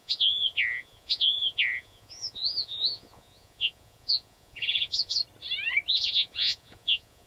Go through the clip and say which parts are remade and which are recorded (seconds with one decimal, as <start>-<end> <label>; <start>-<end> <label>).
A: 0.0-5.2 remade; 5.2-5.9 recorded; 5.9-7.3 remade